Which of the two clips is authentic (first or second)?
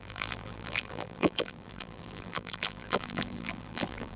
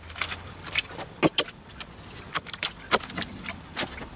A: second